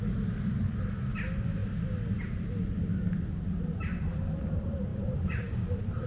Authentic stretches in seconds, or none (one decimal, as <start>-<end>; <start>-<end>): 0.0-4.9